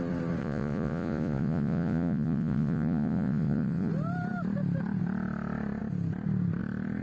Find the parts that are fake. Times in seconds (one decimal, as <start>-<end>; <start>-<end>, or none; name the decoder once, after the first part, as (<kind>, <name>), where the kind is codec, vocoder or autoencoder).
0.4-3.9 (vocoder, Vocos)